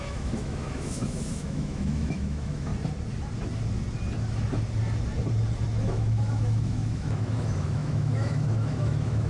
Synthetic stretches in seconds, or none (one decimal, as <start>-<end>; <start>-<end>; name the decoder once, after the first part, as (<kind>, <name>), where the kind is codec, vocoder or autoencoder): 0.0-2.7 (autoencoder, DAC-VAE); 5.8-9.3